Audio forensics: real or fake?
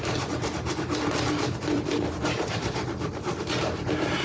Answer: fake